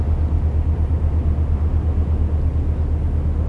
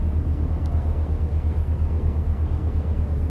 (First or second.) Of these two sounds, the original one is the first